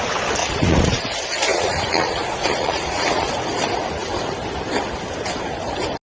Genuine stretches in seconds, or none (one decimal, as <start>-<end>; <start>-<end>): 0.0-0.4; 1.0-1.5; 3.3-6.2